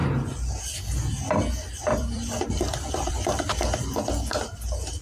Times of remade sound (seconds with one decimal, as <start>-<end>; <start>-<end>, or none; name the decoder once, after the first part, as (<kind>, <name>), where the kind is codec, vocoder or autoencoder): 0.0-0.6 (vocoder, BigVGAN v2); 1.0-4.0